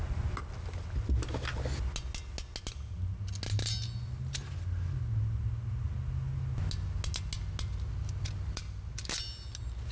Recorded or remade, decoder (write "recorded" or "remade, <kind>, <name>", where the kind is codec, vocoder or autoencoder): recorded